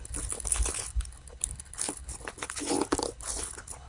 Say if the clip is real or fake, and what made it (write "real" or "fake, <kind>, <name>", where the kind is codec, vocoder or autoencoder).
fake, codec, HILCodec